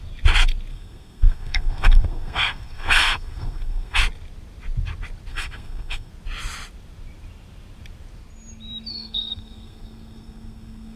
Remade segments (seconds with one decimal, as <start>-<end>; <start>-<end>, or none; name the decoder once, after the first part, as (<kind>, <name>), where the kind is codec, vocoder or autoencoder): 0.7-4.0 (codec, SNAC); 5.3-6.1; 8.9-11.0